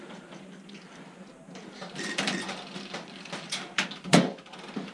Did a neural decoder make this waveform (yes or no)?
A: yes